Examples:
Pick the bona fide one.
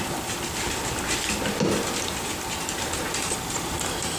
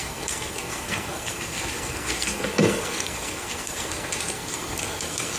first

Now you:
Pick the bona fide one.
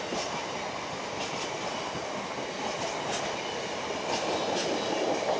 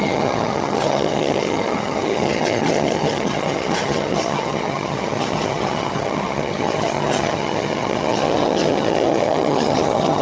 first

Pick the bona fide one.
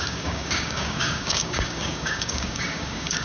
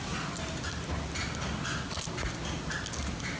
second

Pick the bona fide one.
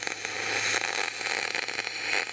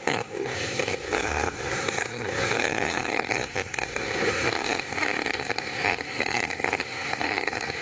first